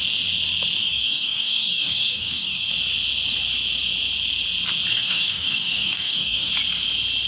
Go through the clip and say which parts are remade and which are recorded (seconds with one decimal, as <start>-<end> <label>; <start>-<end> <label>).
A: 0.0-0.8 recorded; 0.8-2.7 remade; 2.7-4.9 recorded; 4.9-6.5 remade; 6.5-7.3 recorded